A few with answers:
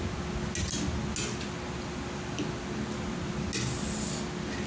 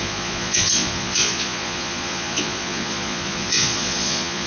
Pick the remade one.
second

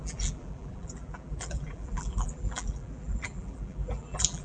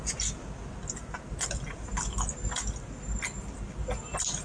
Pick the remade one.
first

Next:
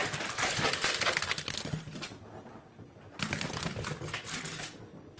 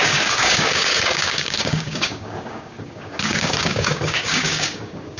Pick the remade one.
second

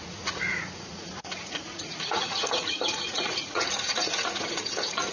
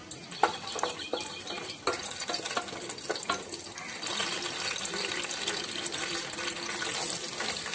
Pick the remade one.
first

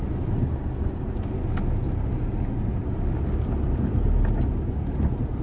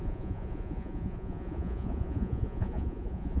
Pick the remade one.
second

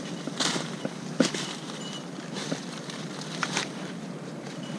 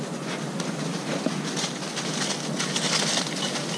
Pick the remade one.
first